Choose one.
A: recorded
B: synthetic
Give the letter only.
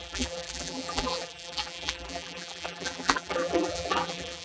B